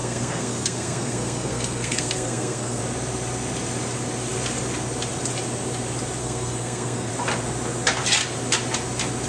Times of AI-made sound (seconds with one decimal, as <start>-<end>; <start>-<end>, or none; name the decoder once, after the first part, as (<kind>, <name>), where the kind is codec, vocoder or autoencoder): 0.0-2.8 (codec, SNAC); 6.2-7.1